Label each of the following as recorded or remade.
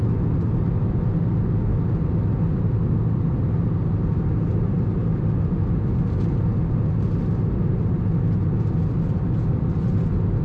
recorded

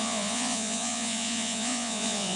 remade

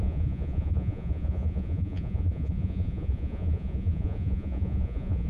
remade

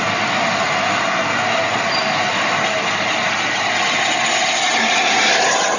recorded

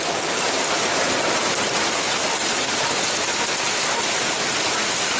recorded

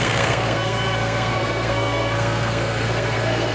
remade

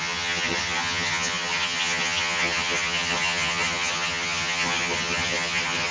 remade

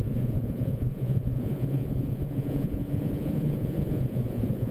remade